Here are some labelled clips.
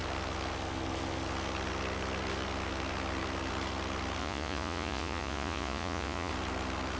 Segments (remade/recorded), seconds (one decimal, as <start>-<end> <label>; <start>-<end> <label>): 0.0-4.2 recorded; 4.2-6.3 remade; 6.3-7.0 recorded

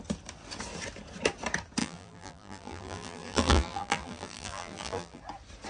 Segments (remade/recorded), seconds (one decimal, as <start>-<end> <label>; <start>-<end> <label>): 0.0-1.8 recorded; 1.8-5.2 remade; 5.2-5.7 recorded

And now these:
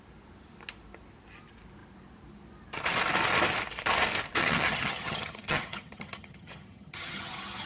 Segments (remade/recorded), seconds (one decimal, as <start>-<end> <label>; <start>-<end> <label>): 0.0-4.4 recorded; 4.4-7.7 remade

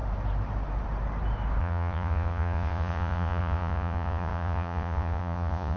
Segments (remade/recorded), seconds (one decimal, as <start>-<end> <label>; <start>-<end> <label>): 0.0-1.6 recorded; 1.6-5.8 remade

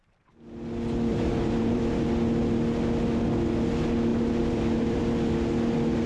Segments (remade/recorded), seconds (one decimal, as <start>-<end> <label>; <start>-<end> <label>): 0.0-1.1 recorded; 1.1-1.8 remade; 1.8-4.1 recorded; 4.1-5.0 remade; 5.0-6.1 recorded

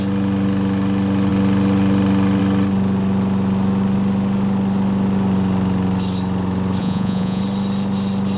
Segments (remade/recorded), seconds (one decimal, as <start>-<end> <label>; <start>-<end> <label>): 0.0-6.8 recorded; 6.8-7.4 remade; 7.4-8.4 recorded